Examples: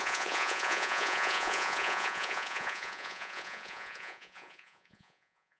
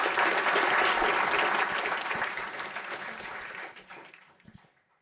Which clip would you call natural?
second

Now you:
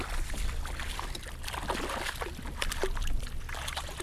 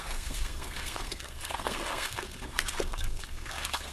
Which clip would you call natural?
first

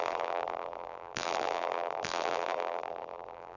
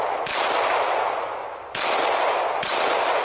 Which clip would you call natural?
second